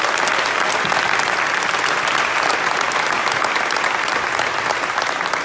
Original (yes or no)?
yes